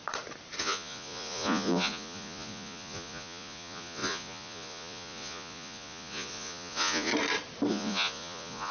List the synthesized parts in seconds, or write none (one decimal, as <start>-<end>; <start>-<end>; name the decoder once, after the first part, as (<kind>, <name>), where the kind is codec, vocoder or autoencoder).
0.6-7.1 (vocoder, Vocos); 7.7-8.7